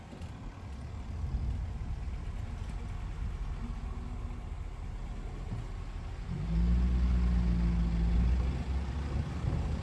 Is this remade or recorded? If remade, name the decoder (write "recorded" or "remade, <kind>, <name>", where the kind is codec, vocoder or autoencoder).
recorded